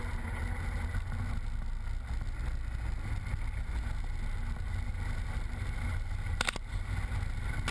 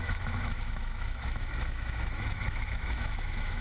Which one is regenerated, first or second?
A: second